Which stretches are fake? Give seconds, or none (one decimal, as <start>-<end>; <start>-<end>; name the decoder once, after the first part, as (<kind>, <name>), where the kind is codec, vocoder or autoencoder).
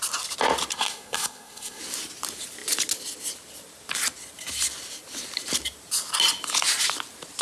0.7-1.8 (codec, SNAC)